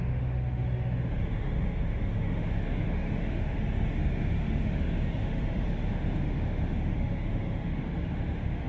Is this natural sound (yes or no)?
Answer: no